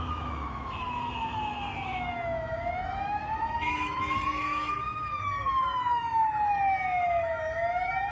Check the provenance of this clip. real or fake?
fake